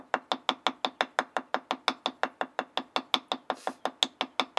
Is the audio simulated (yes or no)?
no